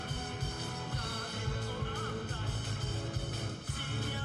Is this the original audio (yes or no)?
no